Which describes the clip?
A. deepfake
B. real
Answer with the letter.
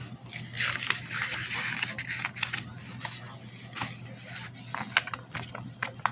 B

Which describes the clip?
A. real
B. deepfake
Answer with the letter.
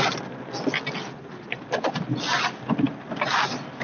A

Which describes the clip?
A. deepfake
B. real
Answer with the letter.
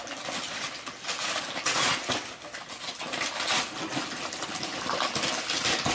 B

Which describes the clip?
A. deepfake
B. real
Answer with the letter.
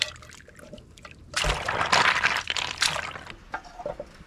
B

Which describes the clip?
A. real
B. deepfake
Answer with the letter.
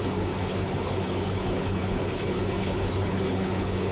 B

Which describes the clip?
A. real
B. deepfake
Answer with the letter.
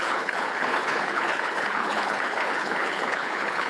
B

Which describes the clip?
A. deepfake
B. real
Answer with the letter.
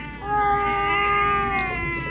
B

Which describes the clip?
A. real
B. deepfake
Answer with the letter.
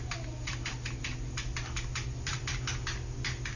A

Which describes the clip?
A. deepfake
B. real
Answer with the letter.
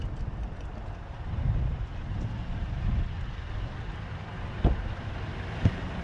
B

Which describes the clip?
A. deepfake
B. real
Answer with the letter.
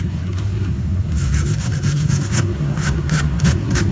A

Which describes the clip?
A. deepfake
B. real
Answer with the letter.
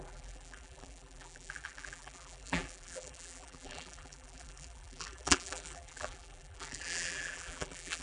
A